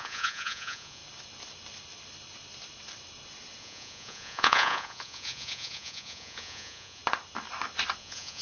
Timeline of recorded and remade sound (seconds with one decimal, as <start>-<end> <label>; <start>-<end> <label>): 0.0-1.0 remade; 1.0-3.6 recorded; 3.6-7.0 remade; 7.0-8.0 recorded; 8.0-8.4 remade